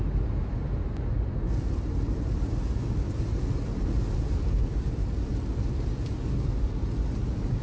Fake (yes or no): no